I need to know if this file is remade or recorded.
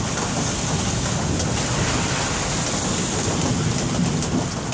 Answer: recorded